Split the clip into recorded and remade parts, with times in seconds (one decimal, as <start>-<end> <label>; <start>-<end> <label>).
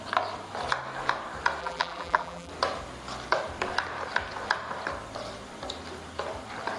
0.0-1.6 recorded; 1.6-2.5 remade; 2.5-6.8 recorded